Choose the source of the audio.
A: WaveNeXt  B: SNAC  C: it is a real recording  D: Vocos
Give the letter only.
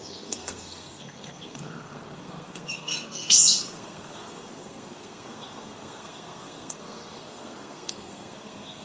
B